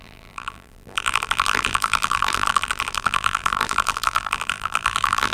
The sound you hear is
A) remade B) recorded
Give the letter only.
A